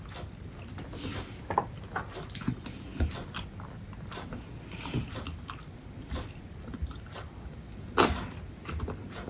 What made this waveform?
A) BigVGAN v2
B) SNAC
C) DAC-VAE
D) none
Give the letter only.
D